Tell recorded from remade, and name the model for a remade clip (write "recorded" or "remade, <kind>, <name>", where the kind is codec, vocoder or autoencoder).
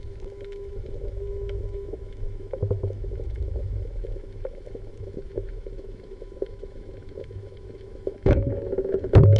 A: remade, autoencoder, DAC-VAE